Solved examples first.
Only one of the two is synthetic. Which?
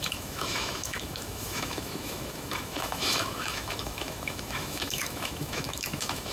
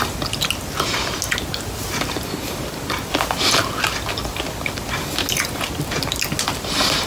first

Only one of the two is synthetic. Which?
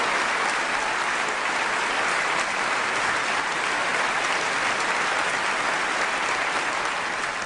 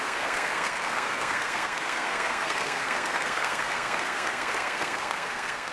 second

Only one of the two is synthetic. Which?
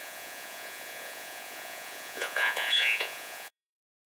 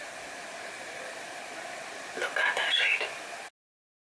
first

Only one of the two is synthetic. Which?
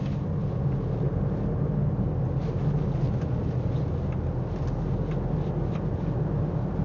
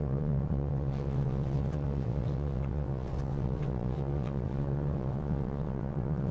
second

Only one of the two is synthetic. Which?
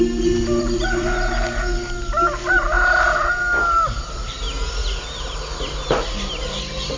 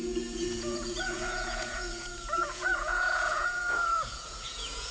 second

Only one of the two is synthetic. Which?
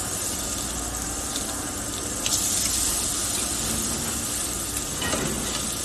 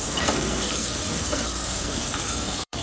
second